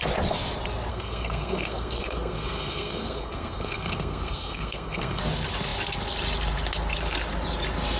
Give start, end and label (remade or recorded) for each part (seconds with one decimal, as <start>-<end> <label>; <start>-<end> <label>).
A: 0.0-0.9 recorded; 0.9-5.2 remade; 5.2-8.0 recorded